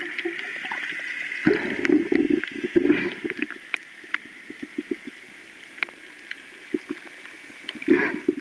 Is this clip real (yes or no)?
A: yes